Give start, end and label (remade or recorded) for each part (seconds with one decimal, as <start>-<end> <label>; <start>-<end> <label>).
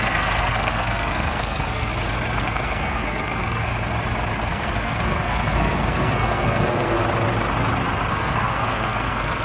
0.0-1.9 remade; 1.9-2.4 recorded; 2.4-3.7 remade; 3.7-4.5 recorded; 4.5-7.0 remade; 7.0-8.1 recorded; 8.1-9.4 remade